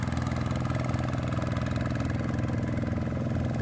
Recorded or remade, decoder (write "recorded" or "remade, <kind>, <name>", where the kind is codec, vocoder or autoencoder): recorded